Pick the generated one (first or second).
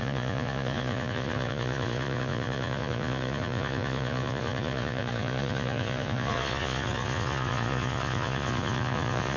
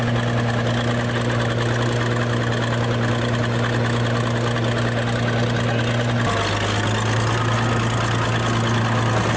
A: first